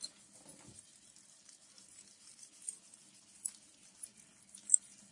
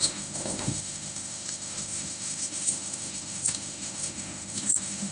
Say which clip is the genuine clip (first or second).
first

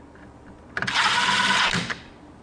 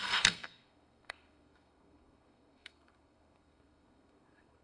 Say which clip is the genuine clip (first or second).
first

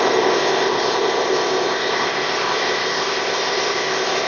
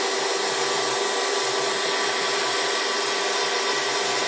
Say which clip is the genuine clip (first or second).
second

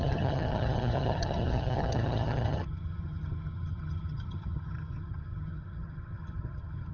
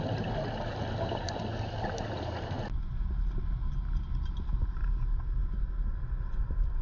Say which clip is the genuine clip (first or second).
second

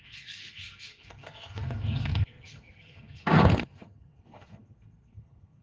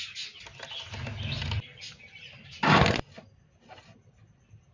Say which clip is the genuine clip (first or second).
second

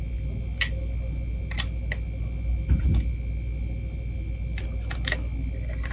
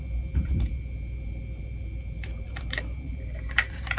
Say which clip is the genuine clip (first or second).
first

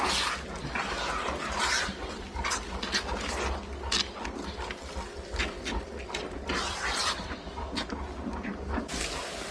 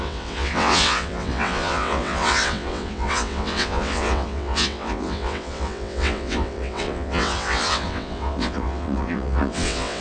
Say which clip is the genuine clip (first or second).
first